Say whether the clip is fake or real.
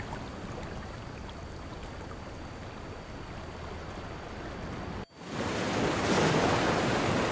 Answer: real